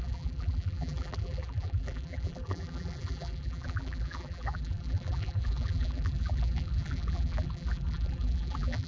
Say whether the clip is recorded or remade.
remade